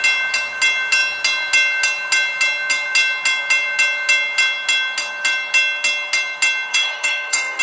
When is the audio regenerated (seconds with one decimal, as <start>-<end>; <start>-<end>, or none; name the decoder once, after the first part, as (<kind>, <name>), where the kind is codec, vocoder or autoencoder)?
6.7-7.6 (autoencoder, DAC-VAE)